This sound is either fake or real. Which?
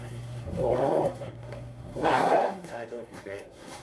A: fake